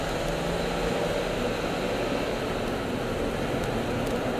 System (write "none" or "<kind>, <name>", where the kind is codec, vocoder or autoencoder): none